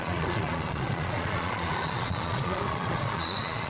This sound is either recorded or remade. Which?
remade